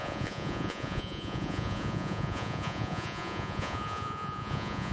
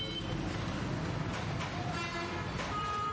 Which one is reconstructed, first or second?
first